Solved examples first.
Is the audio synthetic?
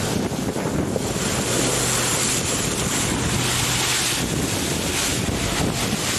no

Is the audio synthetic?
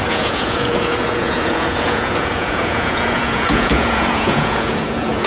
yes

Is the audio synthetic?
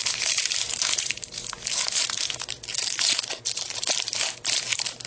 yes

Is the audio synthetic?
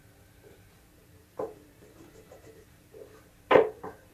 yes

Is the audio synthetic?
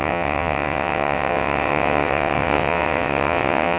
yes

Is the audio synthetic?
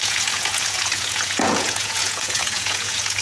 yes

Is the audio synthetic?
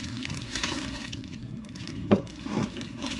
yes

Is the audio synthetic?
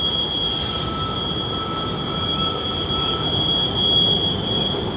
no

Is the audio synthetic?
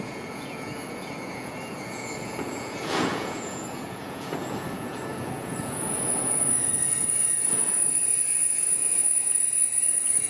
yes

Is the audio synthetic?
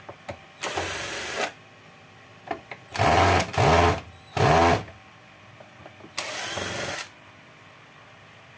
no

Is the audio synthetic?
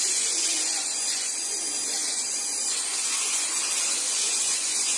yes